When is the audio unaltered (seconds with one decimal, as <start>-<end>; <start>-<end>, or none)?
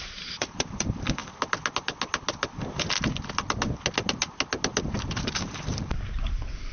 1.2-5.2